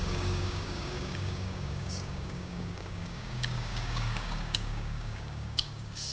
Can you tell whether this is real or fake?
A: fake